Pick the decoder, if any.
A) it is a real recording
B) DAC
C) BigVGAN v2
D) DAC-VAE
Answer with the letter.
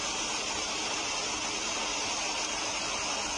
A